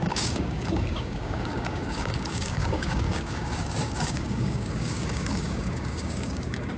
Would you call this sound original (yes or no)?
no